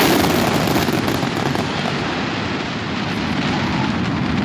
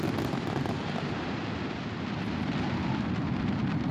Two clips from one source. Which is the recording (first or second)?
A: first